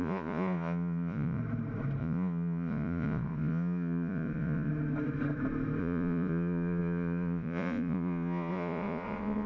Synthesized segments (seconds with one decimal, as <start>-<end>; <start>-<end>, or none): 0.0-1.4; 2.0-4.7; 5.8-9.5